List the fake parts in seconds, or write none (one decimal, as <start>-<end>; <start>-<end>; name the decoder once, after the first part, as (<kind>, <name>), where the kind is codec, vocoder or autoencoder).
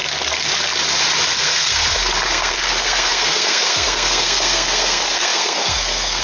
1.3-1.8 (codec, SNAC); 2.3-6.2